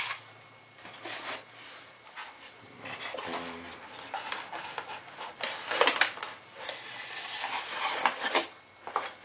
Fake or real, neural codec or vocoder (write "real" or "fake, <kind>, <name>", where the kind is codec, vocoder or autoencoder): real